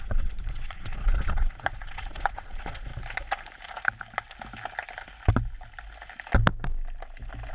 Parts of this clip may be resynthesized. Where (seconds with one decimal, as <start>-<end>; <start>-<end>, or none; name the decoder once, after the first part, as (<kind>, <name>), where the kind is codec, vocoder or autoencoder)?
0.0-2.9 (vocoder, Vocos)

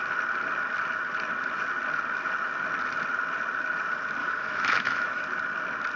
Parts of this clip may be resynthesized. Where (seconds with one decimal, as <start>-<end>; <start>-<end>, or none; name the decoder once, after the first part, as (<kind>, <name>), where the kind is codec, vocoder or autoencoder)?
4.2-5.2 (autoencoder, DAC-VAE)

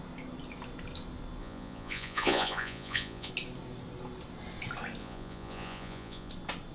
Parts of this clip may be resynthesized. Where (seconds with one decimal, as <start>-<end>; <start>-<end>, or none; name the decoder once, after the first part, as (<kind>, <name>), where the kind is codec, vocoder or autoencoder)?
1.4-3.3 (vocoder, Vocos); 5.0-6.3